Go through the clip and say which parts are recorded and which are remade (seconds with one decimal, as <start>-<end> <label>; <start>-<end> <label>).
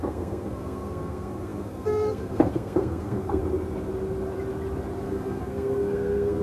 0.0-3.4 remade; 3.4-5.0 recorded; 5.0-6.4 remade